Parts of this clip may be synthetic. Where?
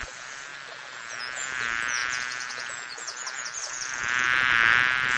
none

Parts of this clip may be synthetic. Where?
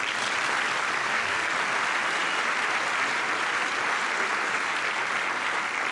1.0-1.5 (codec, SNAC)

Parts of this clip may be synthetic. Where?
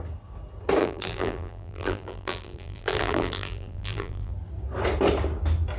0.8-4.3 (vocoder, BigVGAN v2)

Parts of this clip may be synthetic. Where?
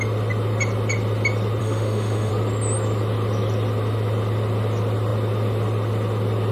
1.6-2.3 (autoencoder, DAC-VAE)